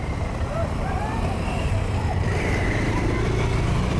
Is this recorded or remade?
remade